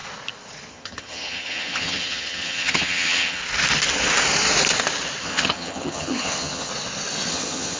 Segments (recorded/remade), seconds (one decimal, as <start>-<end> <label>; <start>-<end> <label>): 0.0-0.7 recorded; 0.7-3.4 remade; 3.4-5.2 recorded; 5.2-6.7 remade; 6.7-7.3 recorded; 7.3-7.8 remade